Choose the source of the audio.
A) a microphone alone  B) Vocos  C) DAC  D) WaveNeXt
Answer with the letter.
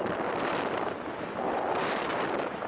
A